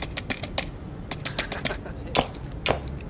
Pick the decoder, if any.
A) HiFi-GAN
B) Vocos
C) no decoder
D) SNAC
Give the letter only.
C